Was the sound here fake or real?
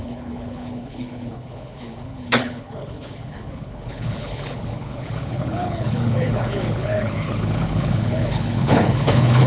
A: fake